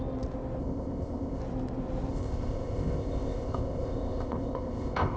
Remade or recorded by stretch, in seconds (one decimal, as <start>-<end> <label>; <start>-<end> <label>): 0.0-0.6 recorded; 0.6-1.4 remade; 1.4-2.1 recorded; 2.1-5.2 remade